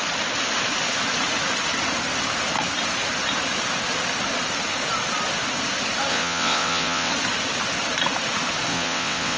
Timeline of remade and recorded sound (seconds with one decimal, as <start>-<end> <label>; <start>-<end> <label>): 0.0-6.1 recorded; 6.1-7.1 remade; 7.1-8.7 recorded; 8.7-9.4 remade